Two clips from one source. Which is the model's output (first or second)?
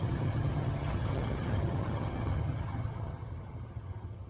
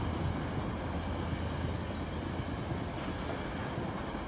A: first